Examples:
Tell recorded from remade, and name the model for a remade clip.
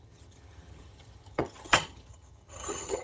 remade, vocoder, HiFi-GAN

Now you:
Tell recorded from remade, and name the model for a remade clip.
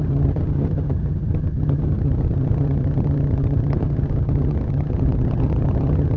remade, vocoder, HiFi-GAN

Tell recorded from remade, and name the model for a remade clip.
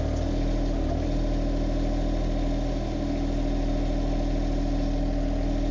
recorded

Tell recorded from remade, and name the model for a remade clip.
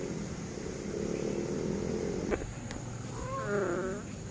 recorded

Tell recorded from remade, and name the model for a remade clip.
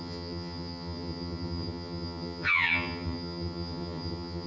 remade, vocoder, HiFi-GAN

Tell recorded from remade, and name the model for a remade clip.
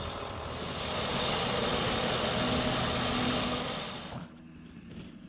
recorded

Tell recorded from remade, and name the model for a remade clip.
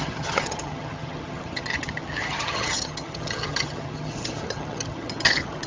remade, vocoder, HiFi-GAN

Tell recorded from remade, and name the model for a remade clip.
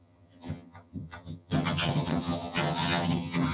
remade, vocoder, HiFi-GAN